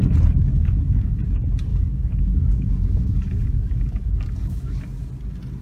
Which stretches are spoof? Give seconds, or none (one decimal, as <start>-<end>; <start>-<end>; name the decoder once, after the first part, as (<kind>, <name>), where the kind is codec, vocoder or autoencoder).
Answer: 0.4-1.1 (codec, DAC); 1.7-5.1